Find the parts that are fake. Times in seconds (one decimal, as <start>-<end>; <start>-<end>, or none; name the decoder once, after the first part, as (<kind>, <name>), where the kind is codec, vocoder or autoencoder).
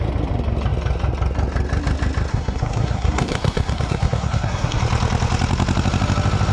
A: 2.3-4.8 (codec, SNAC)